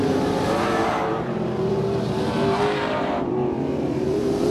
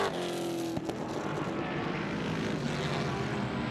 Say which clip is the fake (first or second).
first